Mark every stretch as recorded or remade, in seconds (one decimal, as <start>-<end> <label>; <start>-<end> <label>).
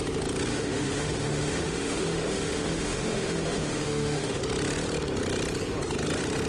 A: 0.0-0.5 recorded; 0.5-4.4 remade; 4.4-6.5 recorded